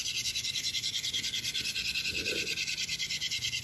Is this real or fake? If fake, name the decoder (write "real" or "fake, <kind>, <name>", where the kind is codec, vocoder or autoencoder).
fake, vocoder, Vocos